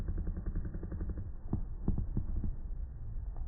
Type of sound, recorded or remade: recorded